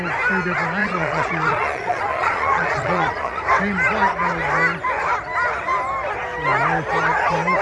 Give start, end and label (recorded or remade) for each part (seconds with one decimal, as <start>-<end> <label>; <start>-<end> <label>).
0.0-0.8 recorded; 0.8-3.4 remade; 3.4-7.6 recorded